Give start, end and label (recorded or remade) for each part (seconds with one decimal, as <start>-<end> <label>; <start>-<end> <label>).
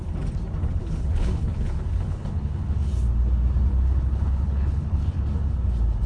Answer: 0.0-0.8 recorded; 0.8-2.9 remade; 2.9-3.7 recorded; 3.7-5.2 remade; 5.2-6.1 recorded